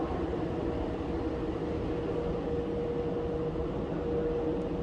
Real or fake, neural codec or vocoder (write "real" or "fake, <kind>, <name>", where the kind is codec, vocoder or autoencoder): real